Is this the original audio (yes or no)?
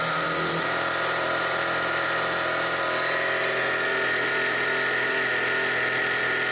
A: yes